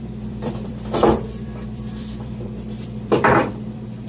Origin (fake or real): fake